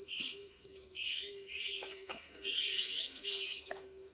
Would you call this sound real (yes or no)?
no